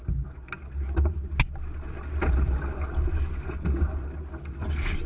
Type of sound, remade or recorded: recorded